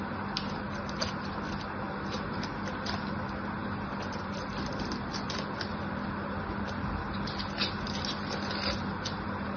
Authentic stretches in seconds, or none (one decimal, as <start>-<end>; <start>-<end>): 0.0-9.6